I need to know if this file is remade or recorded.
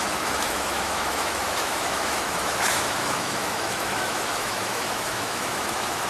remade